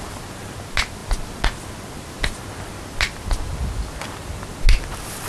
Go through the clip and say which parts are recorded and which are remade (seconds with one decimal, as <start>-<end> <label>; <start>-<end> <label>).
0.0-5.3 recorded